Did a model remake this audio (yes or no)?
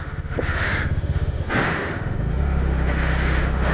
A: yes